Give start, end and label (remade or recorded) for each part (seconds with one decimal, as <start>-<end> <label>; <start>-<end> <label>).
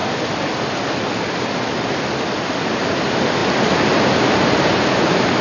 0.0-5.4 recorded